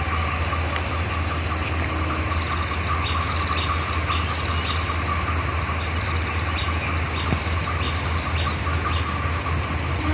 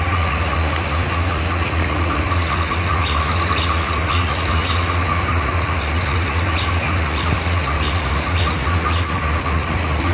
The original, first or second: first